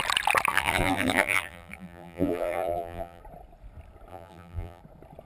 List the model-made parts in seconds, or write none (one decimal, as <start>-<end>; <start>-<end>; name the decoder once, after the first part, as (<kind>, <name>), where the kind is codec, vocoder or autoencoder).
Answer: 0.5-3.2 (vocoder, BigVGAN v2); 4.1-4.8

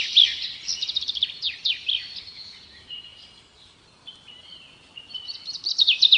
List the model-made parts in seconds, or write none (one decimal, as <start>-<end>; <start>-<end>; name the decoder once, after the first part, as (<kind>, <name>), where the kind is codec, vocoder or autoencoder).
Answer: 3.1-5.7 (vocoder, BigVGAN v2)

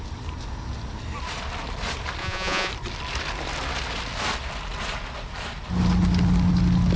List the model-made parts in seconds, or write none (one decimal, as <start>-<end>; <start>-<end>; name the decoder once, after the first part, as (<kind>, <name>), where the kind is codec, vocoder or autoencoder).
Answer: 2.2-2.7 (vocoder, Vocos)